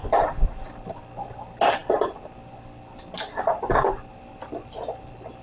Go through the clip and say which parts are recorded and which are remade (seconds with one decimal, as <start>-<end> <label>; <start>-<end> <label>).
0.0-5.4 recorded